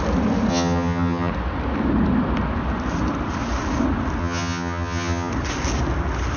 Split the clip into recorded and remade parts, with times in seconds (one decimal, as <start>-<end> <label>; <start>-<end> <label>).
0.0-0.5 recorded; 0.5-1.3 remade; 1.3-4.2 recorded; 4.2-5.3 remade; 5.3-6.4 recorded